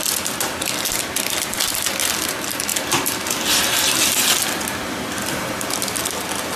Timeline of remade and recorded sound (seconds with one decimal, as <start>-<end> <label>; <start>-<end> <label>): 0.0-6.6 recorded